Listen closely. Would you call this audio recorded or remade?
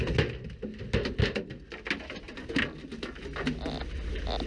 recorded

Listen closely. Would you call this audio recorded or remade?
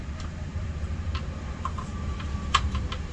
remade